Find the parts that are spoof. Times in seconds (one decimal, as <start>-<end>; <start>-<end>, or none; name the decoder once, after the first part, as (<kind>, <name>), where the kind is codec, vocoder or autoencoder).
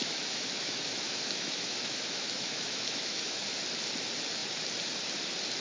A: 0.0-3.4 (autoencoder, DAC-VAE)